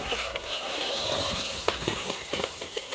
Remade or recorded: remade